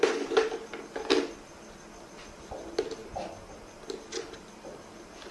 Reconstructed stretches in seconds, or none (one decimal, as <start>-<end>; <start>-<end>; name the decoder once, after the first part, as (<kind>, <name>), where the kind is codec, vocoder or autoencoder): none